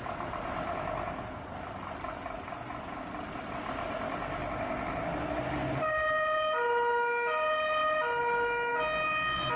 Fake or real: real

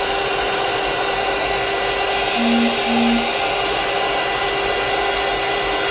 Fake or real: real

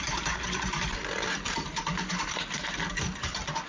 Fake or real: real